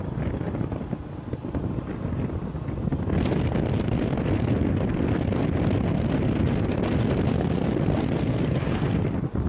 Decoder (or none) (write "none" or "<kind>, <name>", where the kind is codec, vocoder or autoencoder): none